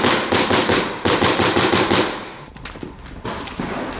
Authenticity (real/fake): real